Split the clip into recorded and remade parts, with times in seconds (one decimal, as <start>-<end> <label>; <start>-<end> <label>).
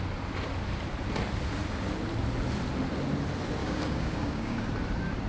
0.0-3.6 recorded; 3.6-4.7 remade; 4.7-5.3 recorded